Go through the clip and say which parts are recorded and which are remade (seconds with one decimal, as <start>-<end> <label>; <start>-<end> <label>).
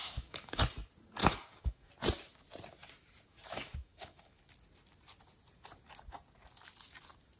0.0-0.6 remade; 0.6-1.2 recorded; 1.2-1.9 remade; 1.9-3.3 recorded; 3.3-4.4 remade; 4.4-7.4 recorded